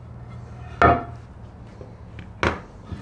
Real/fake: real